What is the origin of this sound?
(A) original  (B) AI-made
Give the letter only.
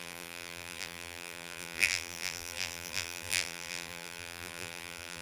B